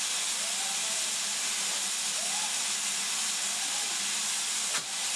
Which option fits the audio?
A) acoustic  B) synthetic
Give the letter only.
A